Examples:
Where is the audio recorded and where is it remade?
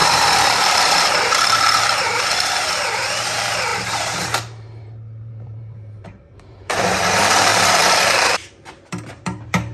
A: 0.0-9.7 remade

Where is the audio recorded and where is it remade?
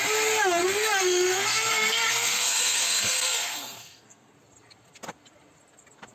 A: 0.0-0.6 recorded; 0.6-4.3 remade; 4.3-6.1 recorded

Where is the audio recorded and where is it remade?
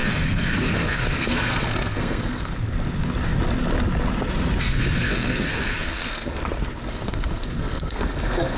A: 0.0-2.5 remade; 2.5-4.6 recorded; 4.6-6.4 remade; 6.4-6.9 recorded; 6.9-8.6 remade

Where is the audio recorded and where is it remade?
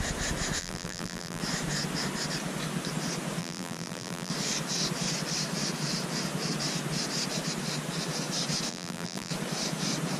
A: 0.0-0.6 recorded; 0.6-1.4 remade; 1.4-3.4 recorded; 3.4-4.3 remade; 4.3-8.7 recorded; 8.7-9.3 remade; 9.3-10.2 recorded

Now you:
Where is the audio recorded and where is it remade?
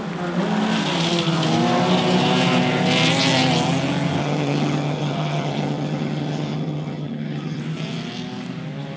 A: 0.0-4.2 recorded; 4.2-7.6 remade; 7.6-9.0 recorded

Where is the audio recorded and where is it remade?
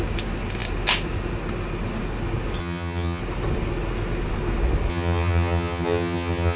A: 0.0-2.6 recorded; 2.6-3.2 remade; 3.2-4.9 recorded; 4.9-6.6 remade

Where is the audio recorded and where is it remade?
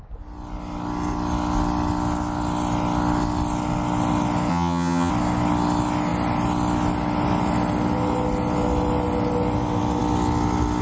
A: 0.0-4.5 recorded; 4.5-5.1 remade; 5.1-10.8 recorded